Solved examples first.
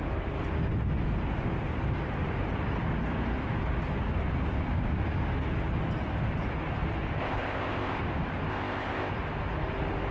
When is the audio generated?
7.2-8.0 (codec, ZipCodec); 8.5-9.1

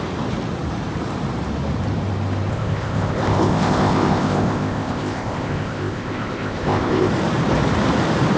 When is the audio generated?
2.5-7.1 (codec, ZipCodec)

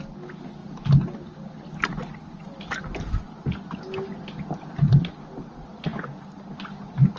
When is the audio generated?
none